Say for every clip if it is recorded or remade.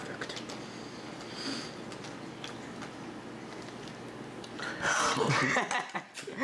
recorded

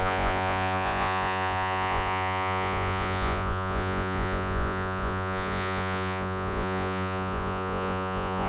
remade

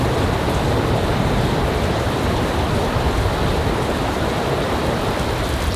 recorded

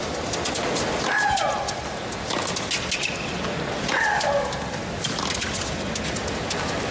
recorded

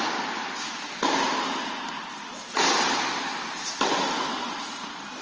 recorded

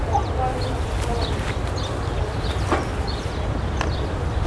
recorded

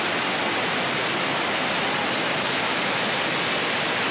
recorded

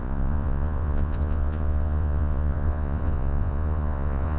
remade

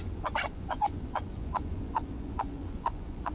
remade